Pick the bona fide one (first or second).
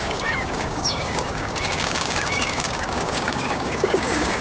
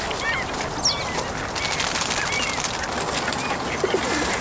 second